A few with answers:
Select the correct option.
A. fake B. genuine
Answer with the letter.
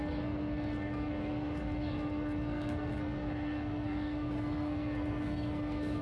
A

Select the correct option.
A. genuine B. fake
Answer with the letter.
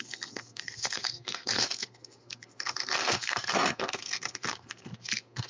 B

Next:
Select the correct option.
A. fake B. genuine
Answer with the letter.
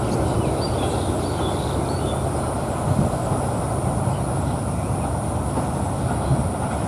B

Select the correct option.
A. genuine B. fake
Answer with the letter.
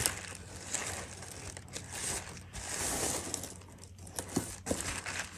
A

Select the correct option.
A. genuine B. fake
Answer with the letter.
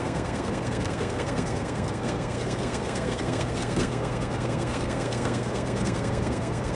B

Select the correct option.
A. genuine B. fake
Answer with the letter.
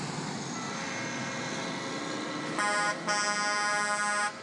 A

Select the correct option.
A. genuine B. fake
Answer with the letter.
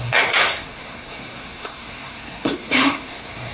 B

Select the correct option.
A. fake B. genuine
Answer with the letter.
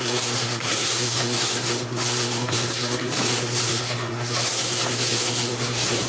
A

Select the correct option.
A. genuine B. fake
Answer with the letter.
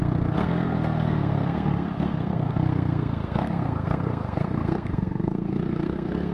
B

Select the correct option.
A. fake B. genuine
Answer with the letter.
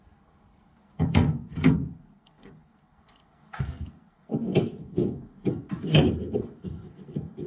A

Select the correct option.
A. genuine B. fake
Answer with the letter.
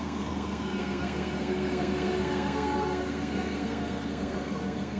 B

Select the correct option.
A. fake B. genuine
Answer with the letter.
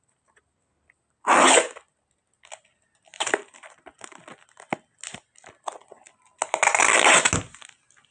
B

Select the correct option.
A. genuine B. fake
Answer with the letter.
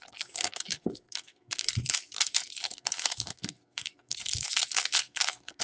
B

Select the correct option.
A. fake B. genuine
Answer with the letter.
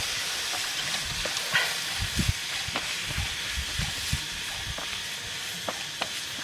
B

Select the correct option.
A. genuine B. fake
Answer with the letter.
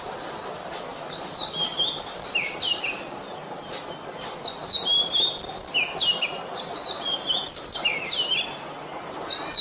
A